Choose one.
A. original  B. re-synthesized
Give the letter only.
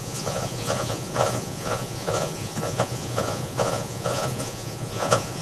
B